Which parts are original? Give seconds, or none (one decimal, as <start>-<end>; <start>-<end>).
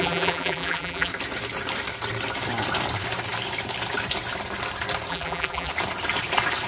1.1-5.1; 5.7-6.7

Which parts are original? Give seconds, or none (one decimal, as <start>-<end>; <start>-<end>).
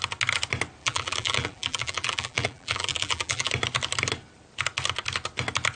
0.0-0.8; 3.5-5.8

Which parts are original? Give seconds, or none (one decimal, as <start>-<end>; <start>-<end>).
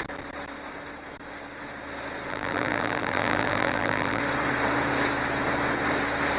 0.0-2.3; 4.2-6.4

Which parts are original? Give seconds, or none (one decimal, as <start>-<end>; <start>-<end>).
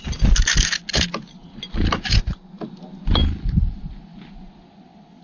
0.0-5.2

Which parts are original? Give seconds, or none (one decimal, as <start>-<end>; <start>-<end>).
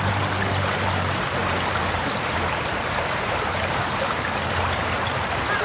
0.0-1.4; 4.8-5.6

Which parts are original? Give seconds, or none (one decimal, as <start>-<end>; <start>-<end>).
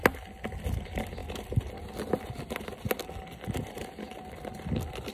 0.0-5.1